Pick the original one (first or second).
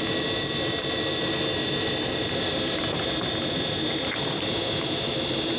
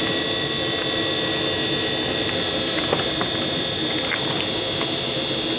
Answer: second